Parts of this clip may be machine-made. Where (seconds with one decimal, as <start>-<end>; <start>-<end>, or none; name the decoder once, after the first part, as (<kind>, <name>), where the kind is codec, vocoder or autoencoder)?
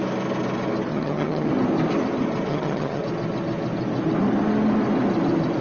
0.9-1.5 (vocoder, HiFi-GAN); 2.5-3.0